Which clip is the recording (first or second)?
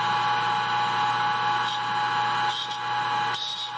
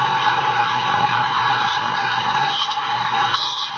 first